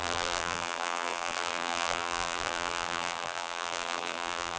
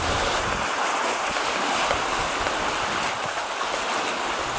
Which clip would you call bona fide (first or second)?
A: second